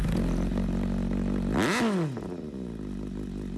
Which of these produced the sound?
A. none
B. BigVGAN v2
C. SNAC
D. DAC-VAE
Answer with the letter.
A